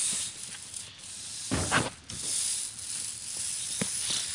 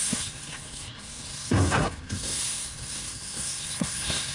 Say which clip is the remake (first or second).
second